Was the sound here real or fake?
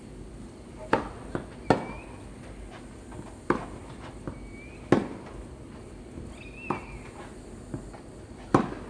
real